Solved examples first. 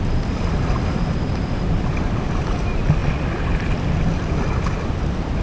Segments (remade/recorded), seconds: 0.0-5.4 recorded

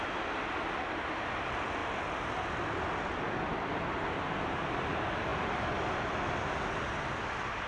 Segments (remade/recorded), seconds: 0.0-7.7 recorded

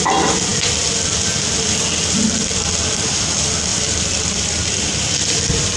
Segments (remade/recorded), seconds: 0.0-3.7 recorded; 3.7-5.8 remade

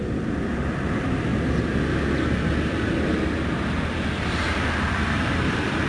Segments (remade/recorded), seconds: 0.0-1.3 remade; 1.3-3.8 recorded; 3.8-5.9 remade

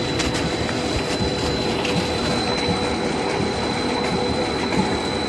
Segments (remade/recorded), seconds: 0.0-1.3 recorded; 1.3-4.5 remade; 4.5-5.3 recorded